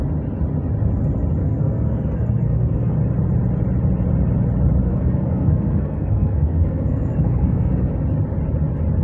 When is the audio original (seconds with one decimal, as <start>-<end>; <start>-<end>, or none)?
0.0-1.4; 2.9-4.8; 7.9-9.0